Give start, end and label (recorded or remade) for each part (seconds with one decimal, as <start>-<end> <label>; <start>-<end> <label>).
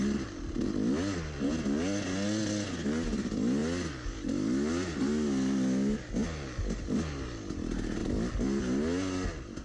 0.0-9.6 recorded